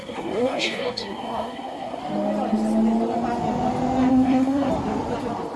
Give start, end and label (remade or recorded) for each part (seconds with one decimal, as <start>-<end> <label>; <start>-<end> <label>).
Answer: 0.0-2.0 remade; 2.0-4.1 recorded; 4.1-4.7 remade; 4.7-5.6 recorded